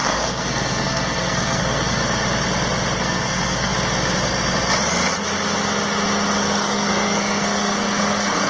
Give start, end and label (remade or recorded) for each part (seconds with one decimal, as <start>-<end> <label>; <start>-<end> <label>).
0.0-2.0 remade; 2.0-3.0 recorded; 3.0-3.7 remade; 3.7-6.4 recorded; 6.4-8.5 remade